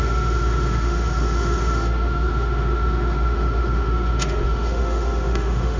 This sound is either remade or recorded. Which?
remade